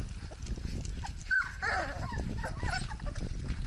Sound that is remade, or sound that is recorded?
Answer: recorded